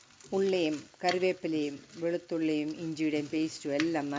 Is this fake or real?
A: real